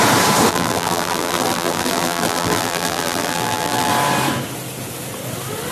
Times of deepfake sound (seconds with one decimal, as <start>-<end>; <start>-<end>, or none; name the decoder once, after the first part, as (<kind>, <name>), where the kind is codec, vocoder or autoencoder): 0.5-3.9 (vocoder, BigVGAN v2)